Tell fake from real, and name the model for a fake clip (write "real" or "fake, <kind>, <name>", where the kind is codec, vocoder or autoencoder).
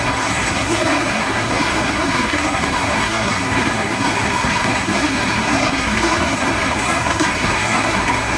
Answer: fake, codec, SNAC